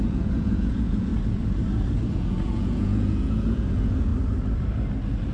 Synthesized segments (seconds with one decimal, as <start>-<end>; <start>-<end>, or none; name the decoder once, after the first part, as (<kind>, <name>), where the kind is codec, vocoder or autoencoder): 0.0-1.1 (vocoder, Vocos); 2.1-4.1